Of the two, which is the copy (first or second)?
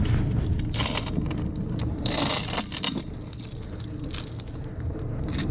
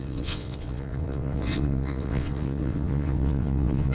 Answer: second